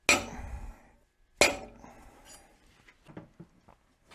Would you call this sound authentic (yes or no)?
yes